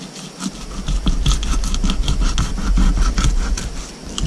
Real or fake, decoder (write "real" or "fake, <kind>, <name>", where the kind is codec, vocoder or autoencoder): real